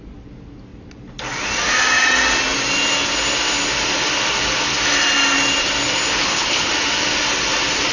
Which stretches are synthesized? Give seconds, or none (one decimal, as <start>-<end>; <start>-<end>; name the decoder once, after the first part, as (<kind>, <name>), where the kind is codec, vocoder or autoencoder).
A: 6.2-6.7 (codec, HILCodec)